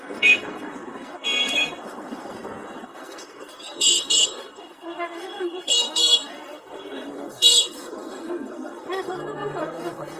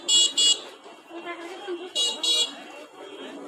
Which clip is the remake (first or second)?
first